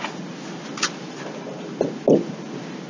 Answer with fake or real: real